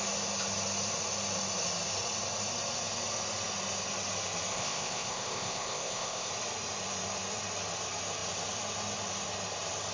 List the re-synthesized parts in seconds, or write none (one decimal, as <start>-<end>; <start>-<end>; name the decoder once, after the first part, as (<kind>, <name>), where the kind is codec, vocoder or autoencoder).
4.5-6.3 (codec, ZipCodec)